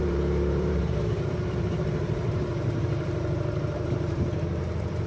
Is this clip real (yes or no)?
no